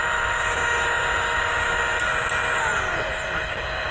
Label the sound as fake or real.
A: real